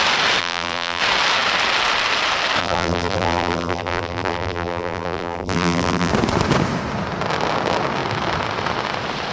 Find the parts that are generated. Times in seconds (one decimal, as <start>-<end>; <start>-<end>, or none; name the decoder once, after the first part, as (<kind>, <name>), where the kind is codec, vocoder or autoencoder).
0.4-1.0 (vocoder, BigVGAN v2); 2.6-6.1